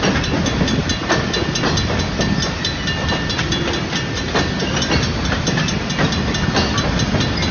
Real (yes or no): yes